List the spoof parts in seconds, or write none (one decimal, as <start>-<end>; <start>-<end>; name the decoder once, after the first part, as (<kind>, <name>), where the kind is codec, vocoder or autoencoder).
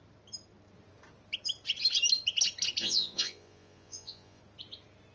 2.8-4.4 (vocoder, Vocos)